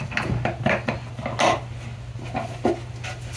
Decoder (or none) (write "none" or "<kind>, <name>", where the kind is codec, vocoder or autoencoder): none